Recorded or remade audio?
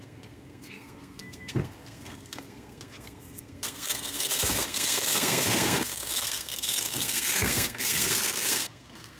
remade